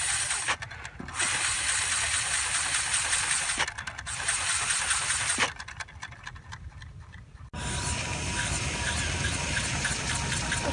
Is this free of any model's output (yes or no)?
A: yes